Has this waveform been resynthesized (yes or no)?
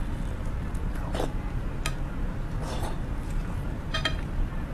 no